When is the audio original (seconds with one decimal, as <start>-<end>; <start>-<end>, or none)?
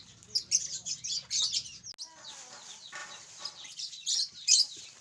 0.0-3.0